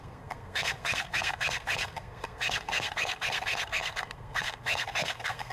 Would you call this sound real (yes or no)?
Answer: no